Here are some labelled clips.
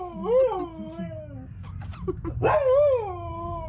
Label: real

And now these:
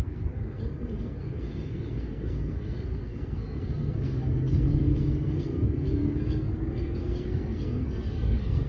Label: fake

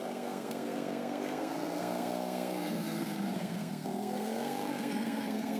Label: fake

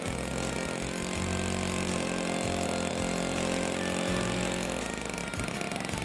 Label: real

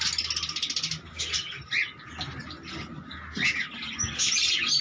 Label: real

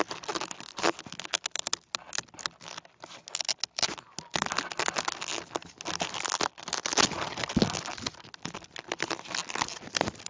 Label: real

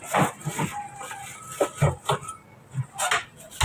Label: real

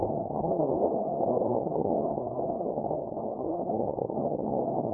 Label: fake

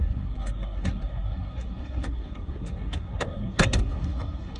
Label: fake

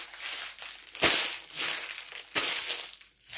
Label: real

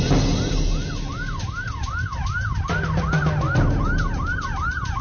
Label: real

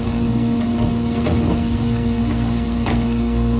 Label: fake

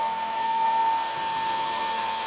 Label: fake